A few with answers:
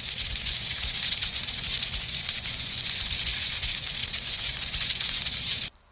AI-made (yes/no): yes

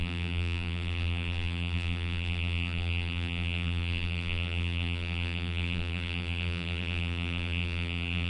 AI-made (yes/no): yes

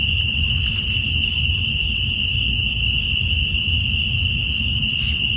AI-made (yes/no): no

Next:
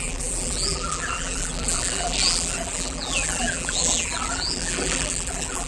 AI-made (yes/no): yes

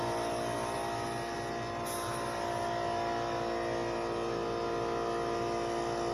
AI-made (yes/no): no